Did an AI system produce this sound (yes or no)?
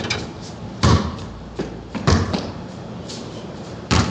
yes